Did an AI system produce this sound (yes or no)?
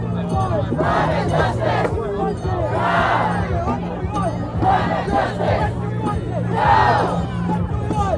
no